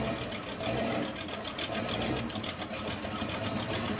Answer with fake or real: real